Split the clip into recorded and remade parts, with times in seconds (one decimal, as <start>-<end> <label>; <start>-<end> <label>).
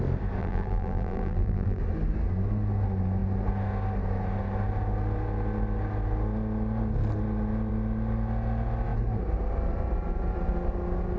0.0-0.4 recorded; 0.4-1.8 remade; 1.8-11.2 recorded